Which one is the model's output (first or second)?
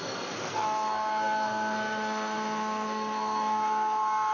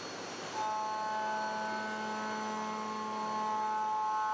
first